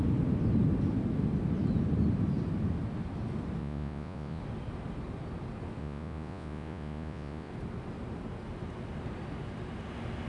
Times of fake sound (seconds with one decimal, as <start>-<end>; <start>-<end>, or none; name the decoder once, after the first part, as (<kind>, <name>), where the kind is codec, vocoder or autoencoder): 3.6-4.4 (vocoder, Vocos); 5.8-7.5